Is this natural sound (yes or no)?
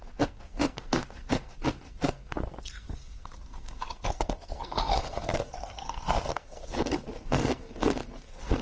no